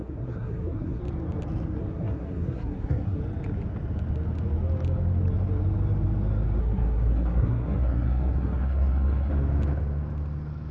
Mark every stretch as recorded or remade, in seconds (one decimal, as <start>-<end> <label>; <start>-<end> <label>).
0.0-1.0 remade; 1.0-1.8 recorded; 1.8-3.2 remade; 3.2-6.6 recorded; 6.6-9.3 remade; 9.3-10.7 recorded